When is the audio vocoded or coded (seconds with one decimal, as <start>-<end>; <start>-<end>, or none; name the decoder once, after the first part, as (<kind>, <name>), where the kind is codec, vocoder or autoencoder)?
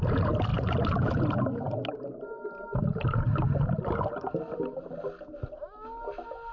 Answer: 0.5-1.1 (vocoder, BigVGAN v2)